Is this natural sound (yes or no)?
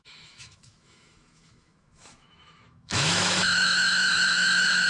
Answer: no